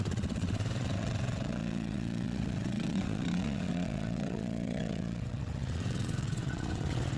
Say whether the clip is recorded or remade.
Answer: remade